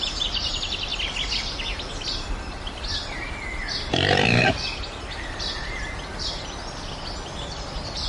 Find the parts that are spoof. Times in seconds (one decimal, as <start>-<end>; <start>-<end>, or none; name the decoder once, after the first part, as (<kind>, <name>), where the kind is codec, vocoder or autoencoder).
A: none